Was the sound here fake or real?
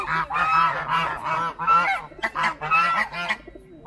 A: real